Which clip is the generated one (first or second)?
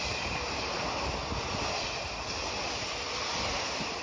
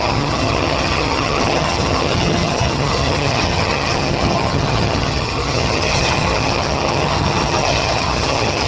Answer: second